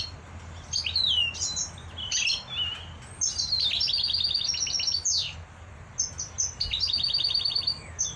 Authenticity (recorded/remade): recorded